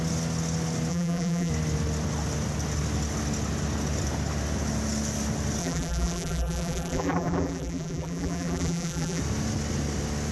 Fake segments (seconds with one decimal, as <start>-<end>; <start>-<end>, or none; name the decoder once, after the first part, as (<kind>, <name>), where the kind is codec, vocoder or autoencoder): 0.9-1.5 (vocoder, BigVGAN v2); 5.6-9.2